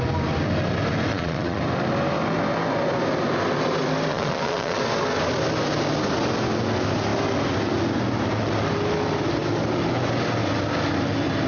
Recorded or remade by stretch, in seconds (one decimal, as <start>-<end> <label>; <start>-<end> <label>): 0.0-1.1 recorded; 1.1-1.6 remade; 1.6-4.1 recorded; 4.1-4.8 remade; 4.8-11.5 recorded

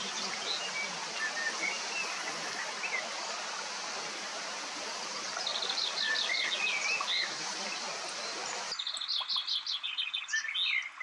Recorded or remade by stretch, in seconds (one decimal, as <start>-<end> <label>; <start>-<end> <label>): 0.0-11.0 recorded

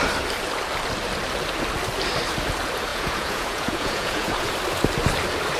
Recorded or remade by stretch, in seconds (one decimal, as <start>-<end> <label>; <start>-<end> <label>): 0.0-2.9 recorded; 2.9-4.5 remade; 4.5-5.6 recorded

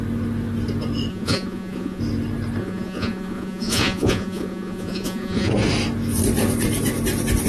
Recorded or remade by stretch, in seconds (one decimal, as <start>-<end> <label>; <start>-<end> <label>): 0.0-1.1 recorded; 1.1-2.0 remade; 2.0-2.6 recorded; 2.6-5.5 remade; 5.5-7.5 recorded